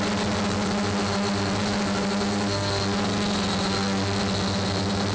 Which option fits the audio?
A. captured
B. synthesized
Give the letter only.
A